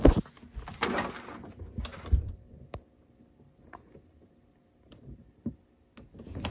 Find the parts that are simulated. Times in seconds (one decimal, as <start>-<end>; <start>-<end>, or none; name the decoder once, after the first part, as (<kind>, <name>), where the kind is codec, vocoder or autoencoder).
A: 1.9-5.5 (vocoder, BigVGAN v2)